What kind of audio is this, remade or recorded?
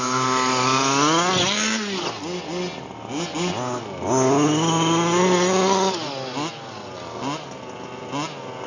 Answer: recorded